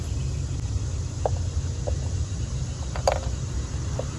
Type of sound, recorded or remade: recorded